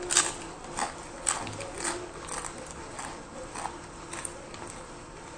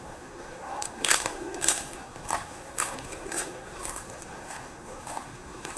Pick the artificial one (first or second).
second